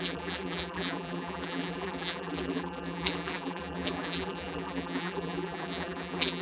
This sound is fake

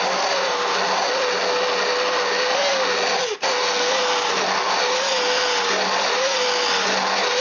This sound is real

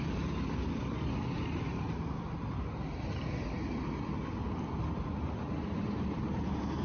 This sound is real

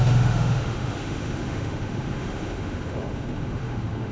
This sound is fake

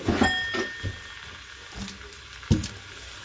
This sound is real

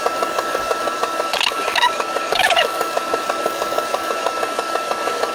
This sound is fake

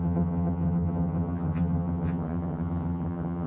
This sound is fake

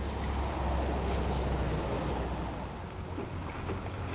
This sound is real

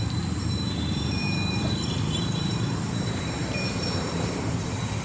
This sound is fake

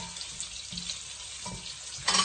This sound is real